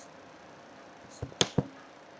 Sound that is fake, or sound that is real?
real